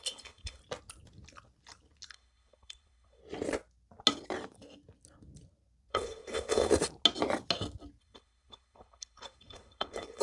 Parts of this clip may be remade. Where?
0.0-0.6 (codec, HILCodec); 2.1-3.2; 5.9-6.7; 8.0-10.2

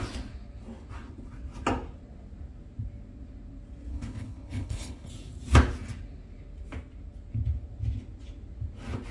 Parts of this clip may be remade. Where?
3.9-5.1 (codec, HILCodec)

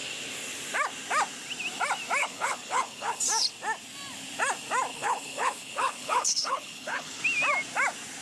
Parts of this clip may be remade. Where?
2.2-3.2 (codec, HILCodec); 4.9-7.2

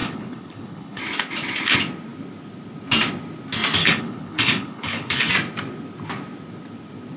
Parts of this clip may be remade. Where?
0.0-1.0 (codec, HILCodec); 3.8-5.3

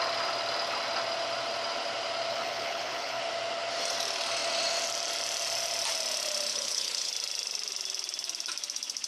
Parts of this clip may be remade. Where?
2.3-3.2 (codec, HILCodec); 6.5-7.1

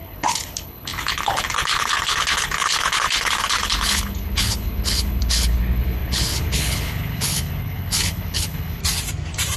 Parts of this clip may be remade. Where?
0.0-8.8 (codec, HILCodec)

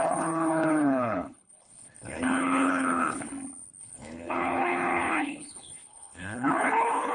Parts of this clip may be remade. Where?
0.0-3.3 (codec, HILCodec); 3.8-7.1